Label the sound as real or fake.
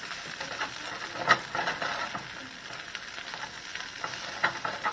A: real